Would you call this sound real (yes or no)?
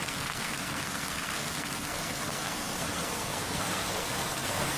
no